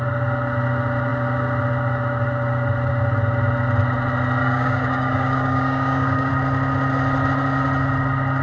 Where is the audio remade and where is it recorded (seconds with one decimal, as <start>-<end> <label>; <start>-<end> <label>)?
0.0-4.4 recorded; 4.4-6.3 remade; 6.3-8.4 recorded